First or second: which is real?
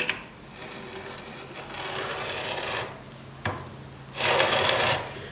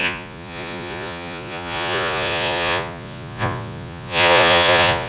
first